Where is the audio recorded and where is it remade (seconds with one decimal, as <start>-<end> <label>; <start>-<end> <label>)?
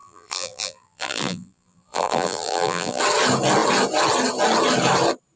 0.0-3.0 remade; 3.0-5.4 recorded